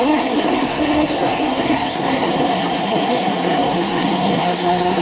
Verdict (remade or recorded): remade